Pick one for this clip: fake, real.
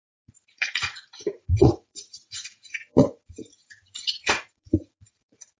fake